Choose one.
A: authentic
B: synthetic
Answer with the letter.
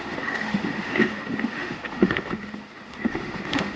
B